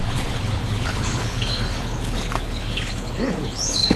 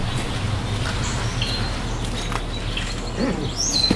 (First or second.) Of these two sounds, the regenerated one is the first